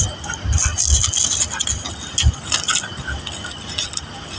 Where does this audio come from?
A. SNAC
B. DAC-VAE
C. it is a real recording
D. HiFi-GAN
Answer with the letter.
C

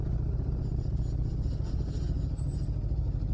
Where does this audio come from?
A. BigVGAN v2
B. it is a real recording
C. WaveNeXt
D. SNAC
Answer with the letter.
B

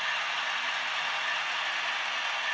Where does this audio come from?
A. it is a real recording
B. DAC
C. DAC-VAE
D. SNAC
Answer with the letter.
A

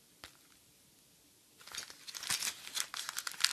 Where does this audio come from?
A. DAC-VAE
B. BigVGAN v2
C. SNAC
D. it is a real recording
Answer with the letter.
D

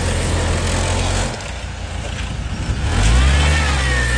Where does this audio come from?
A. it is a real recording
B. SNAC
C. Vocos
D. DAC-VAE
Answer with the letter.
A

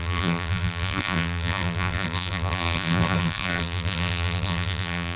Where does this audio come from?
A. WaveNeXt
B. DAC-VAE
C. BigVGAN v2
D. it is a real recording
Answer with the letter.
C